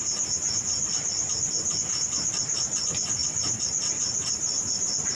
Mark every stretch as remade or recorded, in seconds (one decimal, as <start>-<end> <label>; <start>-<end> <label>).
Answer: 0.0-5.1 recorded